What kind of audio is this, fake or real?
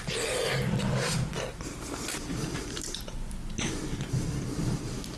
real